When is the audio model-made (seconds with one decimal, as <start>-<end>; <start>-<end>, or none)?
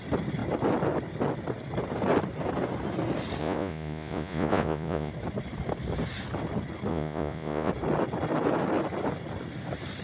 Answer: 3.4-5.1; 6.9-7.7